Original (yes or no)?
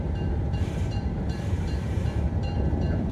no